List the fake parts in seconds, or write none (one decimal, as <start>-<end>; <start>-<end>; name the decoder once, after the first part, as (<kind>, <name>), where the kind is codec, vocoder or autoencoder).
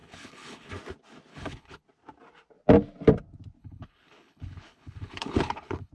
0.0-0.7 (codec, HILCodec); 1.3-1.8; 3.6-5.9